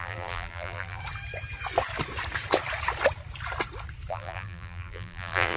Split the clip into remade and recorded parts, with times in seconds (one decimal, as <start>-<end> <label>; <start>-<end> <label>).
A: 0.0-1.0 remade; 1.0-4.1 recorded; 4.1-5.6 remade